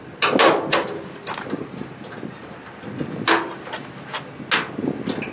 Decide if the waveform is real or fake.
real